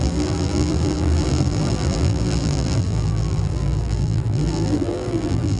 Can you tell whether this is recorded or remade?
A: remade